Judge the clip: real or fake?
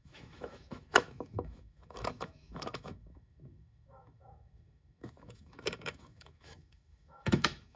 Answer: fake